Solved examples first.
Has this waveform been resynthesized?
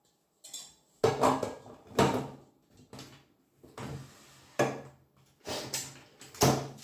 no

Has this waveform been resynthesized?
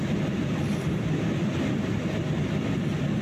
no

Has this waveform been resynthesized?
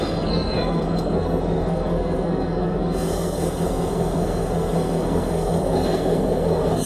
yes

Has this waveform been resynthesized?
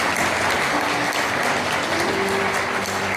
no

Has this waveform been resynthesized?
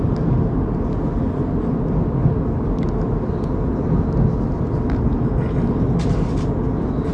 no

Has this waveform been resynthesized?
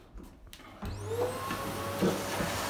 no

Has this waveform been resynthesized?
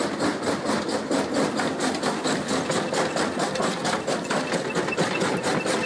no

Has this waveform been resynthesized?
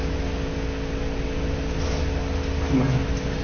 no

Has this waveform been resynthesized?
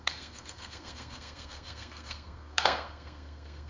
yes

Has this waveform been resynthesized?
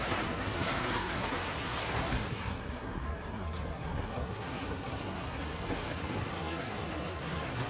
yes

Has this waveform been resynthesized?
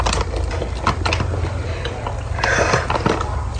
no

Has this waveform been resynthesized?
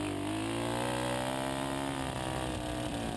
no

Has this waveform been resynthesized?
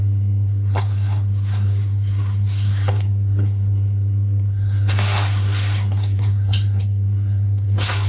yes